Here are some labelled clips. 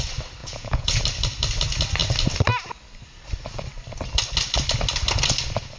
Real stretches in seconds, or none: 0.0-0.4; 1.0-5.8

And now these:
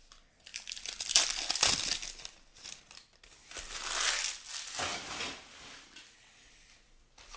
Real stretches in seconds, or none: 0.0-0.5; 2.8-4.9; 6.0-7.4

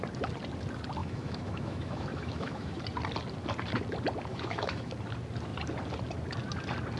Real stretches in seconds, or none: 0.0-1.0; 2.8-4.3; 4.9-7.0